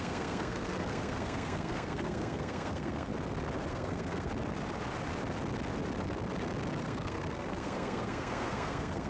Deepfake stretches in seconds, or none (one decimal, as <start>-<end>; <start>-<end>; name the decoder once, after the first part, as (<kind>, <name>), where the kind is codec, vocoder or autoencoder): 0.0-3.1 (codec, SNAC); 3.7-4.3; 6.8-9.1